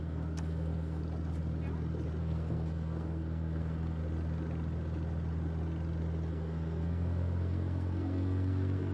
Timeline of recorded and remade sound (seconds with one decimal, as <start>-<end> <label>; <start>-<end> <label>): 0.0-1.0 remade; 1.0-2.2 recorded; 2.2-4.0 remade; 4.0-6.3 recorded; 6.3-8.9 remade